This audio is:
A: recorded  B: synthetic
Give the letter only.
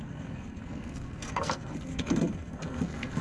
B